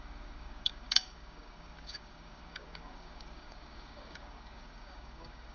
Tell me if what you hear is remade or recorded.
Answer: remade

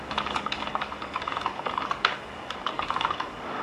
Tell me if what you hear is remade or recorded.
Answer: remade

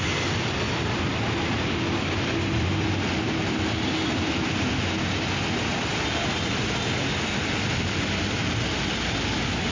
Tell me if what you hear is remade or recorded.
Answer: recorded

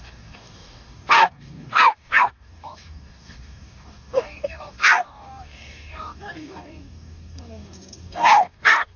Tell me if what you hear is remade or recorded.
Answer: remade